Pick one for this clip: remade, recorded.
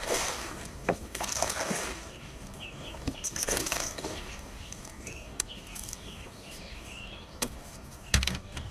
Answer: remade